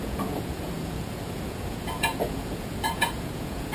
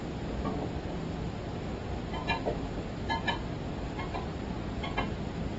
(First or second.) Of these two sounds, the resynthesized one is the first